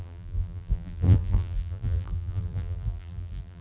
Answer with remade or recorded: remade